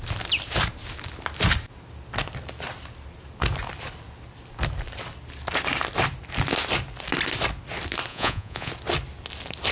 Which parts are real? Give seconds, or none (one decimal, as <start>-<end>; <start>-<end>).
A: 0.0-8.1; 8.7-9.7